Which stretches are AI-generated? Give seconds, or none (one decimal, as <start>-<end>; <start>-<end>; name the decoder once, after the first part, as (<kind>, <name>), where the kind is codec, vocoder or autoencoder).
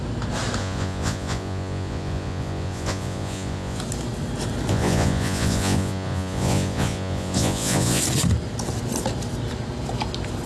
0.6-3.8 (vocoder, Vocos); 4.7-8.0